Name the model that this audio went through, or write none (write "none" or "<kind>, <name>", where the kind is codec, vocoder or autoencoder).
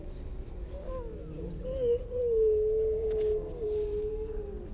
none